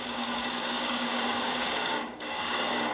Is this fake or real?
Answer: fake